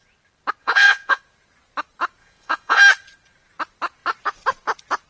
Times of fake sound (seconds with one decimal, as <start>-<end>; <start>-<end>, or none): 0.6-1.2; 2.2-2.8